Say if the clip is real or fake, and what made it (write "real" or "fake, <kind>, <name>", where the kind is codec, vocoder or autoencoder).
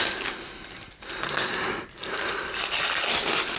real